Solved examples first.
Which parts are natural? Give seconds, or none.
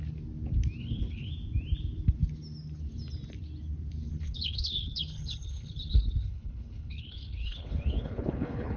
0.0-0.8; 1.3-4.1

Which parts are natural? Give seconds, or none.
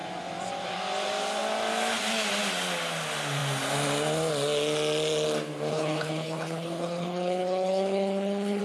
0.0-5.7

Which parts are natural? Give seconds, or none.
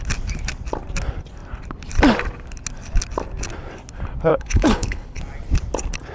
0.0-4.3; 5.2-6.1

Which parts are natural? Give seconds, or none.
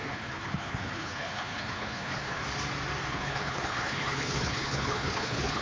2.4-3.1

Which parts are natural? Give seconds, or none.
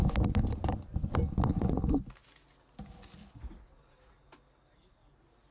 0.0-5.5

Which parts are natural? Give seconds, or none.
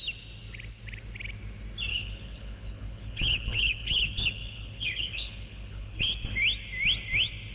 0.0-1.9; 6.1-7.5